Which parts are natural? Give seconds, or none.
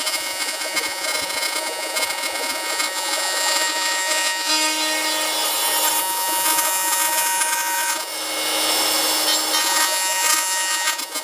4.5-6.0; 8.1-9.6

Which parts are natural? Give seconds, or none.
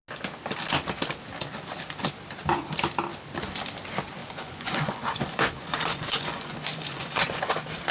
0.0-4.2; 7.4-7.9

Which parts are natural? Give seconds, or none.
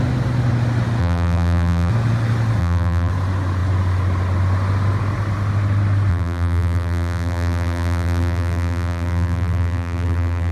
0.0-1.0; 1.9-2.6; 3.1-6.1